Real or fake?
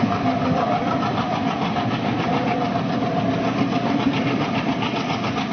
fake